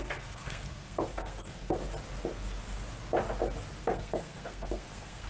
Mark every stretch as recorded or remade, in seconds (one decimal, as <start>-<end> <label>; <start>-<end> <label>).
0.0-1.8 remade; 1.8-3.8 recorded; 3.8-5.3 remade